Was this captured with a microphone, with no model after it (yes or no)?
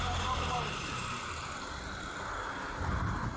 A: no